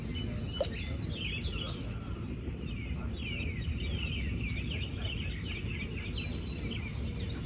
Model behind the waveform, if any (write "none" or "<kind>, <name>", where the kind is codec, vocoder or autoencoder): none